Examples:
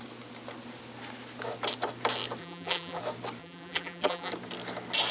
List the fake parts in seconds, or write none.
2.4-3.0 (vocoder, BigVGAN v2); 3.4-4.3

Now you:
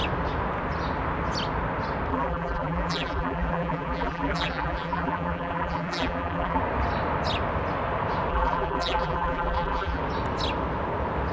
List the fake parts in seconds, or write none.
2.1-6.6 (vocoder, BigVGAN v2); 8.3-10.0

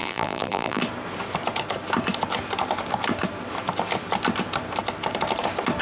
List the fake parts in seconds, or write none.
0.0-0.8 (vocoder, BigVGAN v2)

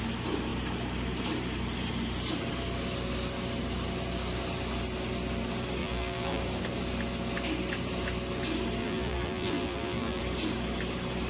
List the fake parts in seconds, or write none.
5.8-6.4 (vocoder, BigVGAN v2); 8.8-10.2

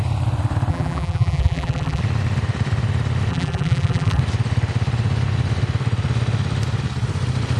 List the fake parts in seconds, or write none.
0.7-2.0 (vocoder, BigVGAN v2); 3.3-4.2